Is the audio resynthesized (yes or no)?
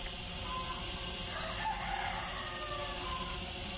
no